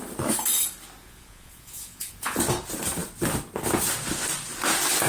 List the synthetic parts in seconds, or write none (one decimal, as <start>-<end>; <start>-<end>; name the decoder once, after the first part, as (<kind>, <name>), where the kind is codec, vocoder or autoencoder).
1.0-2.4 (vocoder, Vocos)